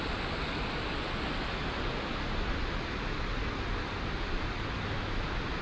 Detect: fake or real real